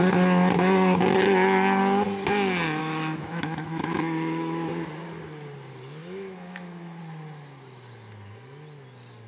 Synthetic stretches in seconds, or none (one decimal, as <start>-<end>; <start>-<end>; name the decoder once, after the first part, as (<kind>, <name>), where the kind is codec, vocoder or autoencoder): 2.8-4.7 (autoencoder, DAC-VAE); 6.0-7.0